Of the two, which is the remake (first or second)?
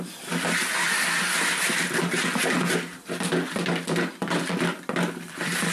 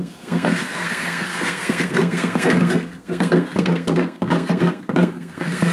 second